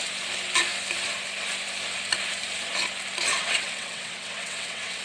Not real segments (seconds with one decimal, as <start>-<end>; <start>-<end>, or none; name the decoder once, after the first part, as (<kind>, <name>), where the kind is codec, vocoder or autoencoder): 3.3-5.0 (vocoder, WaveNeXt)